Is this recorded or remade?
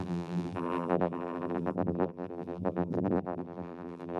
remade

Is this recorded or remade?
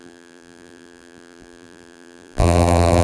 remade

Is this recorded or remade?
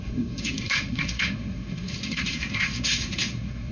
remade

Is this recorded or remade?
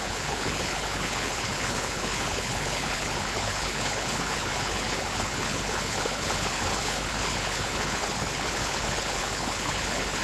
remade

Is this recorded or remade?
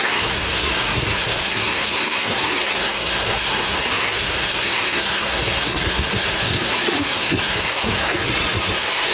remade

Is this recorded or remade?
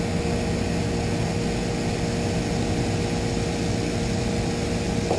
recorded